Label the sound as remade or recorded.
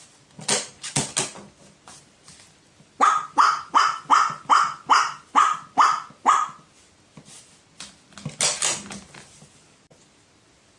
recorded